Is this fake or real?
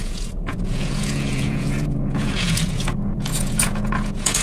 fake